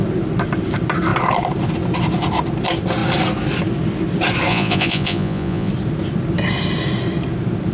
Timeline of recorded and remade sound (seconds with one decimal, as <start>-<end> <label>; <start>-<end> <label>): 0.0-4.5 recorded; 4.5-5.7 remade; 5.7-7.7 recorded